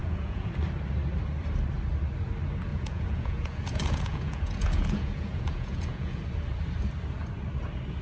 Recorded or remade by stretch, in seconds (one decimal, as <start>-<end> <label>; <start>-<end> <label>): 0.0-0.5 remade; 0.5-2.7 recorded; 2.7-6.2 remade; 6.2-8.0 recorded